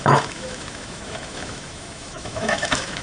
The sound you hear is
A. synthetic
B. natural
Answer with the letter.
A